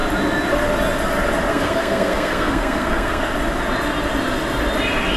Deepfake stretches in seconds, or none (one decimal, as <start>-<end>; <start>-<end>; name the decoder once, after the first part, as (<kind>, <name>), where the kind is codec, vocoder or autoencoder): 1.5-3.2 (codec, SNAC)